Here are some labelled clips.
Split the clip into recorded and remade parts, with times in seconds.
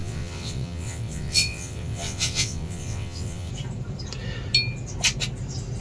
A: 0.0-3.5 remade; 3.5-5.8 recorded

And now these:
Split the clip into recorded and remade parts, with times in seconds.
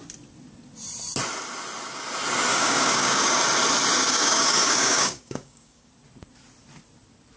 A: 0.0-2.5 recorded; 2.5-3.4 remade; 3.4-4.0 recorded; 4.0-5.9 remade; 5.9-7.4 recorded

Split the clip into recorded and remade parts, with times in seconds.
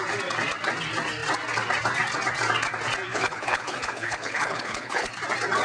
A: 0.0-3.1 recorded; 3.1-5.1 remade; 5.1-5.6 recorded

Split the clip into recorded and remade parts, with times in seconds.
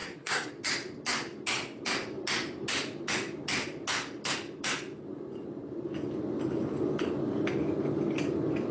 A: 0.0-0.5 remade; 0.5-8.7 recorded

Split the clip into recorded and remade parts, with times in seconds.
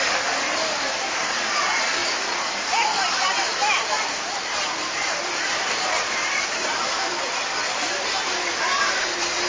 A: 0.0-2.0 remade; 2.0-2.5 recorded; 2.5-9.5 remade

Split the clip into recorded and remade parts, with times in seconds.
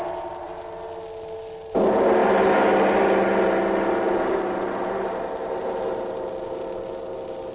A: 0.0-7.5 recorded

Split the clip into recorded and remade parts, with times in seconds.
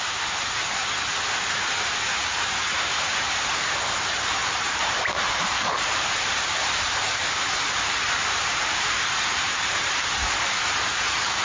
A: 0.0-0.8 remade; 0.8-1.5 recorded; 1.5-11.4 remade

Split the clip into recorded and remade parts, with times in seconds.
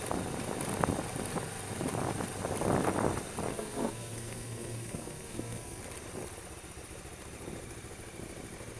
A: 0.0-3.5 recorded; 3.5-5.8 remade; 5.8-8.8 recorded